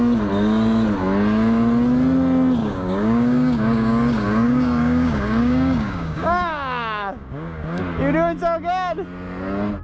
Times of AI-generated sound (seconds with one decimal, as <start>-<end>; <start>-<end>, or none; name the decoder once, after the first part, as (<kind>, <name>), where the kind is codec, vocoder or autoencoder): 2.6-7.8 (codec, DAC)